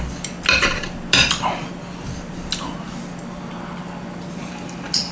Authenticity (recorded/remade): recorded